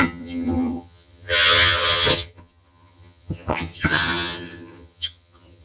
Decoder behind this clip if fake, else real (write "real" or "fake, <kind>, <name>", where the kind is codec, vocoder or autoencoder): fake, vocoder, HiFi-GAN